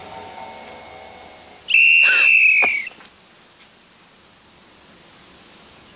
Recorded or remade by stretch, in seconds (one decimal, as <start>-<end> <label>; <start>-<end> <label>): 0.0-6.0 recorded